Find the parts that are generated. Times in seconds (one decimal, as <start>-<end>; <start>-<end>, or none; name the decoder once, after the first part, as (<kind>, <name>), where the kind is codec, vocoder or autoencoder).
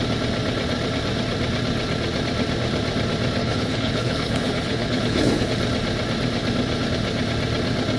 3.4-5.5 (codec, HILCodec)